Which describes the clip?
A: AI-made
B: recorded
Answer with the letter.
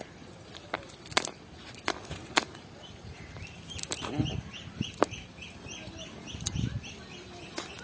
B